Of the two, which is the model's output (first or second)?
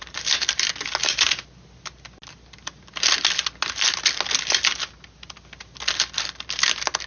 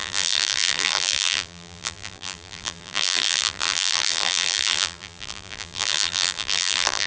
second